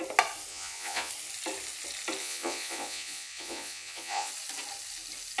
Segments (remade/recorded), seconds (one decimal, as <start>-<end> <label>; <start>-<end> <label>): 0.0-0.5 recorded; 0.5-1.1 remade; 1.1-2.2 recorded; 2.2-4.3 remade; 4.3-5.4 recorded